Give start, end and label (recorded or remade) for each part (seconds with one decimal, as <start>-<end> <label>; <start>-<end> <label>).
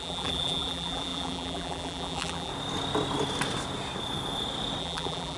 0.0-2.5 remade; 2.5-4.8 recorded; 4.8-5.4 remade